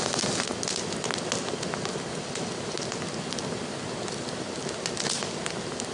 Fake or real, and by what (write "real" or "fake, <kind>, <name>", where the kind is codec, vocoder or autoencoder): real